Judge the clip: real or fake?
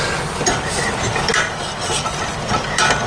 real